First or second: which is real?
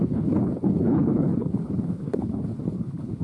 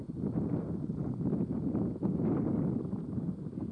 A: second